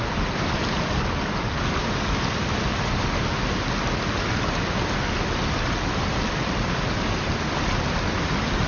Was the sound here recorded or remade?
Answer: recorded